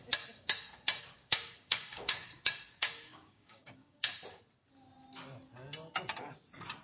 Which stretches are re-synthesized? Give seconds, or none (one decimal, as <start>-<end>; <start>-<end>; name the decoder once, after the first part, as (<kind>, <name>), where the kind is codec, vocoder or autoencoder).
1.2-4.4 (codec, DAC)